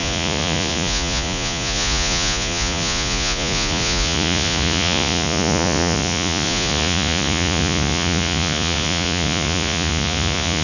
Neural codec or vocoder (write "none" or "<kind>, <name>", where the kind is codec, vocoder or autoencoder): vocoder, Vocos